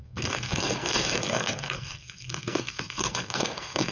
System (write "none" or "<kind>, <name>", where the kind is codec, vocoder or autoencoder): codec, SNAC